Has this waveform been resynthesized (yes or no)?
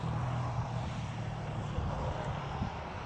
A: no